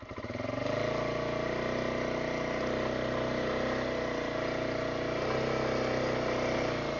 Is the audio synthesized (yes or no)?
no